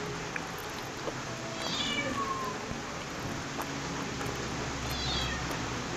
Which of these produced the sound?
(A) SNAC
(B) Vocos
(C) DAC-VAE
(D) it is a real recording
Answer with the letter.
D